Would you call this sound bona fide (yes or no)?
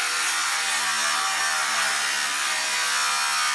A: yes